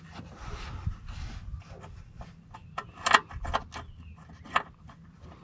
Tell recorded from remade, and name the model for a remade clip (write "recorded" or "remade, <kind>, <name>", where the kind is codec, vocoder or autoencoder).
recorded